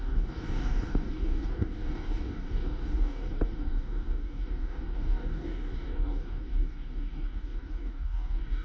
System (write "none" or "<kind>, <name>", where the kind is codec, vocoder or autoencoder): codec, DAC